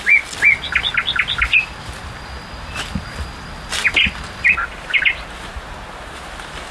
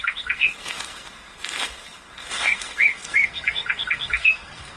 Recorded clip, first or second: first